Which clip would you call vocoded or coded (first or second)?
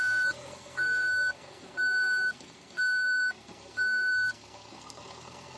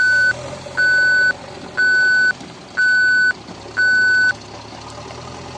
first